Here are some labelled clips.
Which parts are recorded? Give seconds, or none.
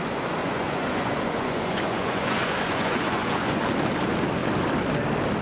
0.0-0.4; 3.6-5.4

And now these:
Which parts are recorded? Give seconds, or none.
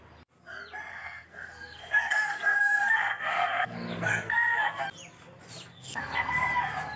0.0-0.9; 4.8-5.7; 6.3-7.0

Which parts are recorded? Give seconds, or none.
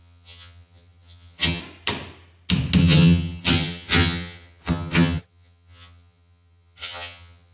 1.6-2.8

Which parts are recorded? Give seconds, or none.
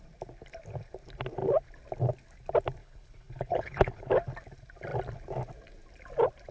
0.0-2.8; 4.1-6.5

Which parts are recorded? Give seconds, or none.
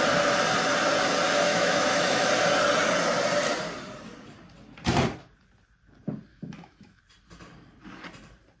0.0-1.5; 2.3-6.3; 7.0-8.6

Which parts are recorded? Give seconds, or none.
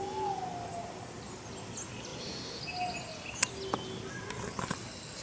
0.0-5.2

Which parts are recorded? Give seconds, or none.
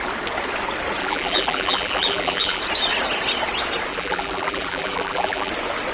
0.0-1.0; 2.6-3.9; 5.5-5.9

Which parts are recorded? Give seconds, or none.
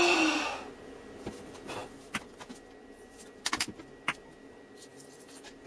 0.0-5.7